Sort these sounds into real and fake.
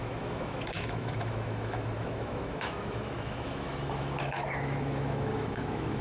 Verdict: fake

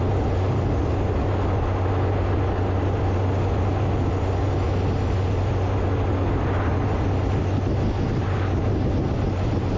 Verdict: real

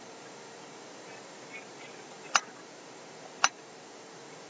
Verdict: fake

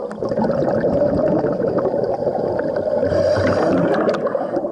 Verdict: real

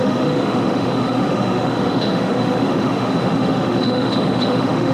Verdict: fake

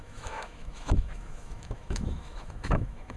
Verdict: fake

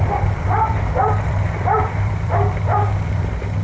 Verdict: fake